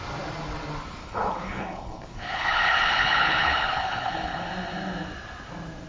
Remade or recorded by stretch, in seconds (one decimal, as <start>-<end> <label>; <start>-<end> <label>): 0.0-1.0 recorded; 1.0-4.5 remade; 4.5-5.9 recorded